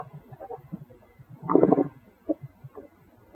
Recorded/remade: remade